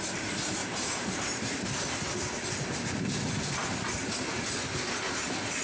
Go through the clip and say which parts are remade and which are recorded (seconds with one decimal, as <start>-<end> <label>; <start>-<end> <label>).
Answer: 0.0-0.6 recorded; 0.6-1.8 remade; 1.8-5.6 recorded